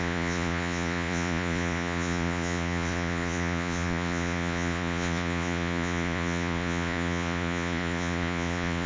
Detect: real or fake fake